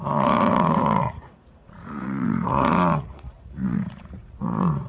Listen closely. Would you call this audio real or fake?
fake